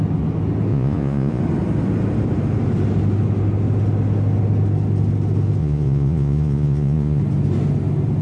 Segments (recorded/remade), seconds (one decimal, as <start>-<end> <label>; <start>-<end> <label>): 0.0-0.7 recorded; 0.7-1.4 remade; 1.4-5.6 recorded; 5.6-7.2 remade; 7.2-8.2 recorded